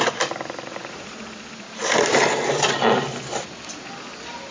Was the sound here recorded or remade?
recorded